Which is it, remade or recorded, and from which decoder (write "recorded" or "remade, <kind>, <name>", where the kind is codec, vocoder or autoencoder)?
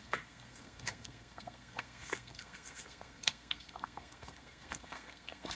remade, codec, SNAC